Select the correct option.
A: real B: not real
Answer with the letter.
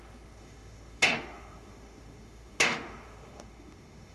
B